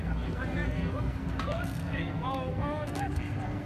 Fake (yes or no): yes